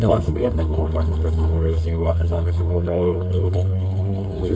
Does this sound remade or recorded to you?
remade